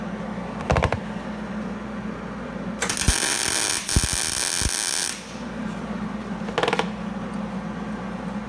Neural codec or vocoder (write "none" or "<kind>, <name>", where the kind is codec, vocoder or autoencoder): none